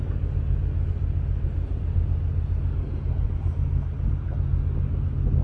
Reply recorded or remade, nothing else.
recorded